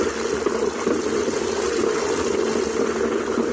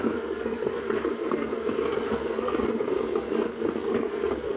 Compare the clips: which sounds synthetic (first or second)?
second